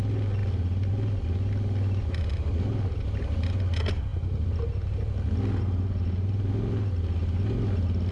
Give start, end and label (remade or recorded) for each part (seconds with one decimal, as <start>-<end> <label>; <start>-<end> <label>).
0.0-8.1 recorded